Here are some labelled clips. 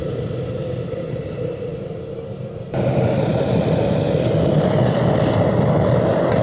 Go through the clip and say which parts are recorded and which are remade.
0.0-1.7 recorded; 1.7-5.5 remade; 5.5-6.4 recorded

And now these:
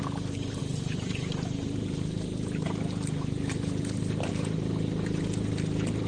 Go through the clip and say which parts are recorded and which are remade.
0.0-0.6 recorded; 0.6-4.3 remade; 4.3-6.1 recorded